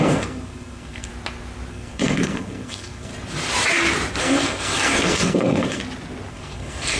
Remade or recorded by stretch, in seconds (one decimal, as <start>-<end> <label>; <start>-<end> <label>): 0.0-1.1 remade; 1.1-1.7 recorded; 1.7-3.1 remade; 3.1-4.2 recorded; 4.2-5.8 remade; 5.8-6.3 recorded; 6.3-7.0 remade